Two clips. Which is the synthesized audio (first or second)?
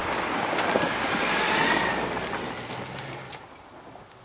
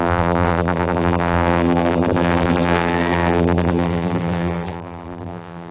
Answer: second